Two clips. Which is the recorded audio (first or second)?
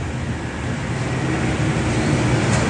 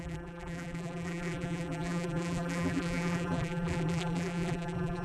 first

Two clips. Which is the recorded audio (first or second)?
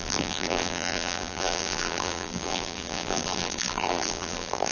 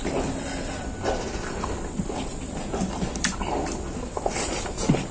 second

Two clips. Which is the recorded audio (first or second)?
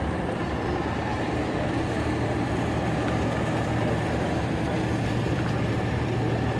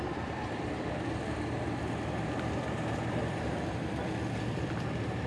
first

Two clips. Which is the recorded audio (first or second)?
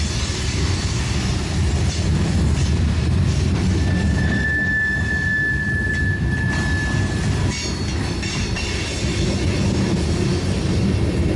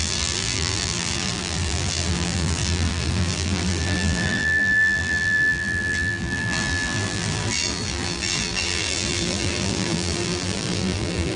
first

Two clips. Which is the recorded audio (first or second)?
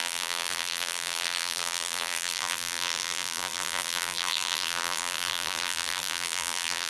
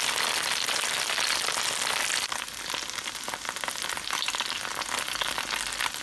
second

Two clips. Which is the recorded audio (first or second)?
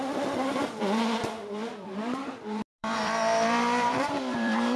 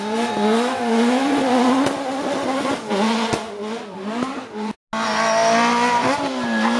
second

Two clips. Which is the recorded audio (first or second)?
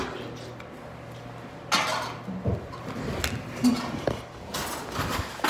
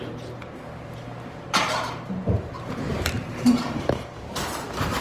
first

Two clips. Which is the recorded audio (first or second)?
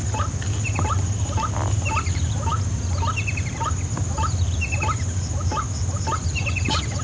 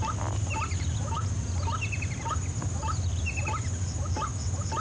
second